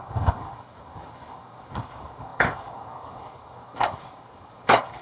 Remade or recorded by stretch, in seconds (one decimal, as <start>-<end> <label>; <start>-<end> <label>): 0.0-5.0 remade